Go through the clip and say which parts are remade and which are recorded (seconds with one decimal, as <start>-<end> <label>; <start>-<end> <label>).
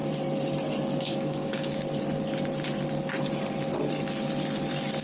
0.0-1.0 recorded; 1.0-1.7 remade; 1.7-5.0 recorded